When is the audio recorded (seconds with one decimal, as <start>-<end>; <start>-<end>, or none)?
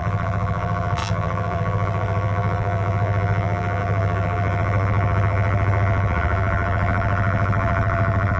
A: none